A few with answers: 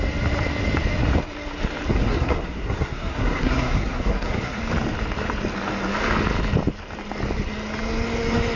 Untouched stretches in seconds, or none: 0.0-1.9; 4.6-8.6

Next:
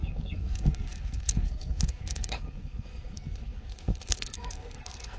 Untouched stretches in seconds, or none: none